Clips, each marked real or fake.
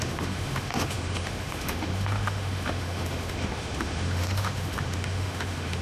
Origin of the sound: fake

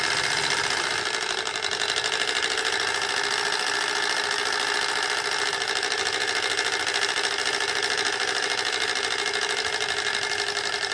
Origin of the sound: real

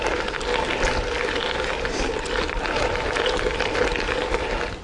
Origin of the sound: real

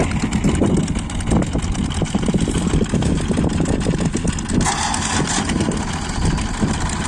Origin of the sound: real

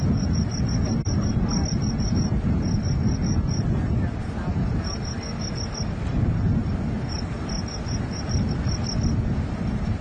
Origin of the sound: real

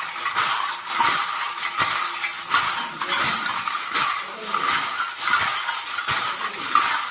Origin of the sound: real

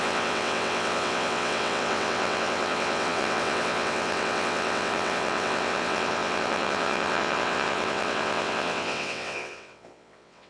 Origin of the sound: fake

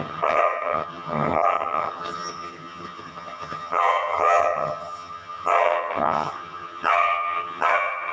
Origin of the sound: fake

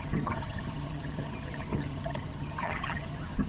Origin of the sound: fake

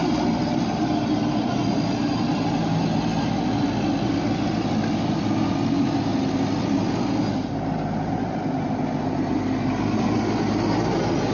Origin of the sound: real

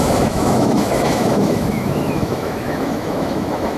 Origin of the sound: fake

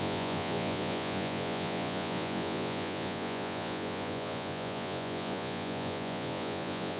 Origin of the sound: fake